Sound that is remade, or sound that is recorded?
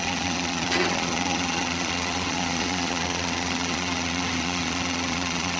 remade